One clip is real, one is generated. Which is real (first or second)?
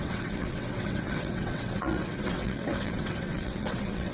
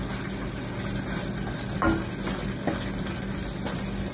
second